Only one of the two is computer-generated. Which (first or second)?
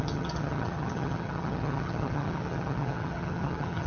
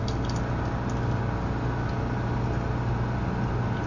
first